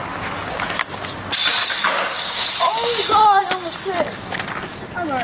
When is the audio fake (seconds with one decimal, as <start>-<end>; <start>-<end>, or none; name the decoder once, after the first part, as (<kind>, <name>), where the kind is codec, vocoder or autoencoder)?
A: 1.6-3.4 (codec, DAC)